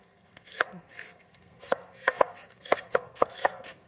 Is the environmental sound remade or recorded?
remade